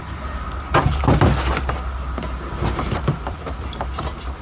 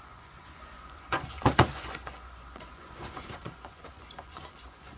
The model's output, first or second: second